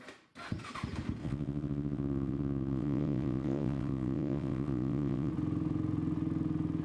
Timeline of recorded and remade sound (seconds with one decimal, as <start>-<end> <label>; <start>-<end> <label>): 0.0-1.2 recorded; 1.2-5.3 remade; 5.3-6.8 recorded